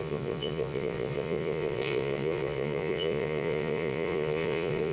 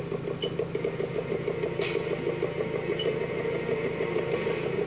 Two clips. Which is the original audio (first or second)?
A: second